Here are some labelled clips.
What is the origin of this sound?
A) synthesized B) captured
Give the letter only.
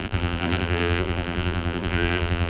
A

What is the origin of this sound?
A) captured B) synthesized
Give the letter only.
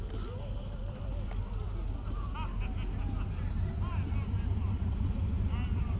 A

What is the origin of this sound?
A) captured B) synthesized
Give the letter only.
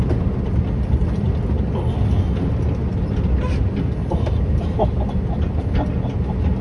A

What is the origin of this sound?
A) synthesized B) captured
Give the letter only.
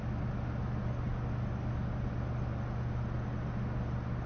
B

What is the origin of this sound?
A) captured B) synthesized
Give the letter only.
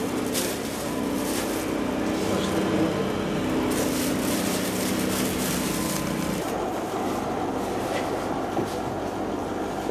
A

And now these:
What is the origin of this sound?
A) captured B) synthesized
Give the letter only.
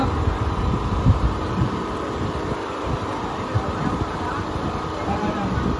B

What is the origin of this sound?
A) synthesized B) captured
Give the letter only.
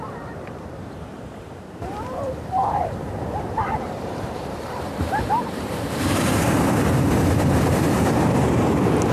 A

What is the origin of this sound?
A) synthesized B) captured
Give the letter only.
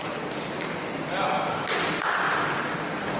B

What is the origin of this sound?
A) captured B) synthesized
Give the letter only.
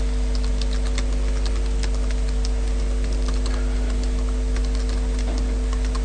A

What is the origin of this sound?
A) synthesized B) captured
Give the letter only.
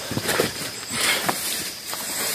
A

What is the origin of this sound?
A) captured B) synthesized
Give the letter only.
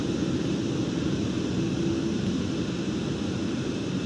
A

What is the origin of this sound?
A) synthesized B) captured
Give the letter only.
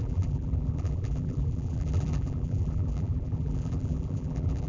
A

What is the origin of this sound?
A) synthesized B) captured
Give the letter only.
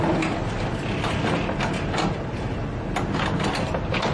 B